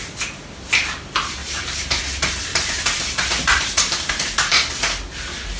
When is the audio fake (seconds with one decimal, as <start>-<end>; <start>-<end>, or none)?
1.4-2.0; 2.5-4.1